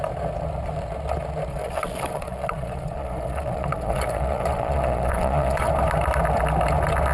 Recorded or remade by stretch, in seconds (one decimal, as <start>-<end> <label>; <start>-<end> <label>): 0.0-1.5 recorded; 1.5-5.7 remade; 5.7-7.1 recorded